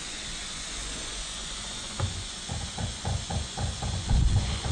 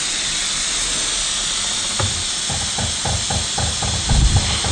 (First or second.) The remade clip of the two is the first